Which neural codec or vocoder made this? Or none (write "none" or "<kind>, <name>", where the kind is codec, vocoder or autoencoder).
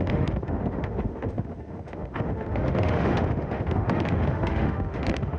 autoencoder, DAC-VAE